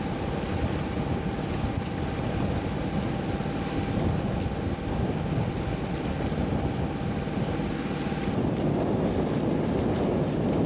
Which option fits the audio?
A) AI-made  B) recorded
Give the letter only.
B